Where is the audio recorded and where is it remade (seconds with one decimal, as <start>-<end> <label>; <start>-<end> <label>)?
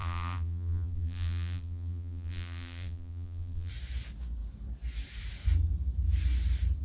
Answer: 0.0-3.7 remade; 3.7-6.8 recorded